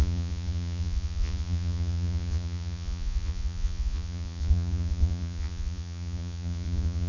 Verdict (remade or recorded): remade